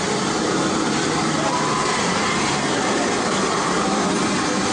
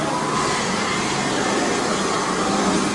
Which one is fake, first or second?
first